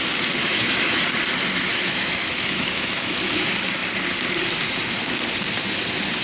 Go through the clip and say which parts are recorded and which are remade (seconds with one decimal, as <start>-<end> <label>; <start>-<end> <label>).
0.0-0.4 recorded; 0.4-1.0 remade; 1.0-1.7 recorded; 1.7-3.3 remade; 3.3-6.2 recorded